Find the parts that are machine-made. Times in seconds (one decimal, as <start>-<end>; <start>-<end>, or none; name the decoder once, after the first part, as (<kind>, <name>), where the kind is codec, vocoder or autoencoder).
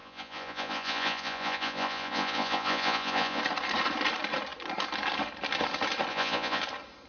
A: 0.0-3.4 (vocoder, Vocos); 6.1-6.6